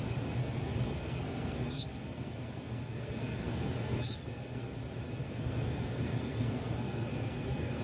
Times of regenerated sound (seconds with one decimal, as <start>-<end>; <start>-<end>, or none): 0.4-4.8; 5.2-7.8